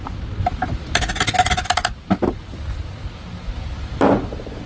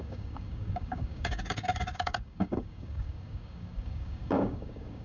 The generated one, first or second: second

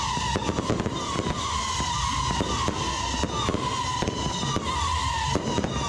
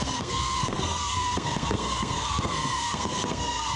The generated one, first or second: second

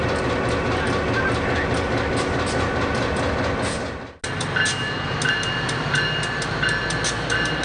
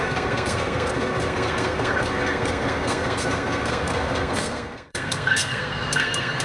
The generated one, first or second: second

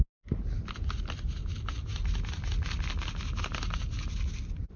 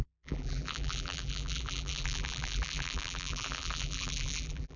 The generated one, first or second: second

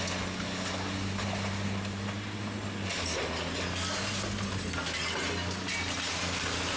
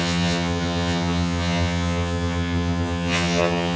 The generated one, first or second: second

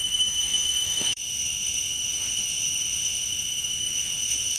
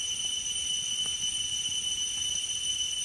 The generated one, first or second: first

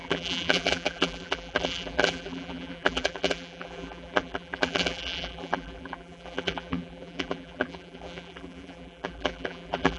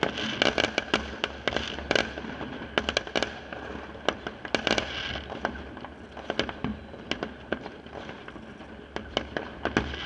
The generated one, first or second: first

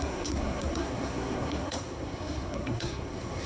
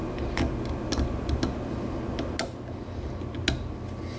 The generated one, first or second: first